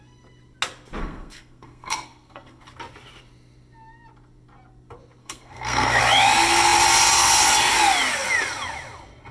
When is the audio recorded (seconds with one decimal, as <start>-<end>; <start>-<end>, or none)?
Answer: 0.0-1.0; 2.6-5.2; 6.0-9.3